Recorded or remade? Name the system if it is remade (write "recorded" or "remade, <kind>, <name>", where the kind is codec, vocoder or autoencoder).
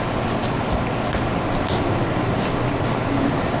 recorded